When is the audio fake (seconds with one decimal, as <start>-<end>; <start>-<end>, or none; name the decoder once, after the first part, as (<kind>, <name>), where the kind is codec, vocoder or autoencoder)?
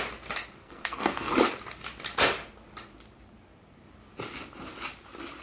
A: 0.6-1.3 (codec, SNAC)